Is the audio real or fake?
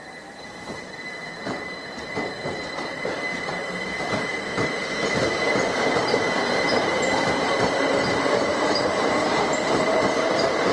fake